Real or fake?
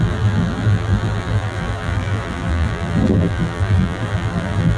fake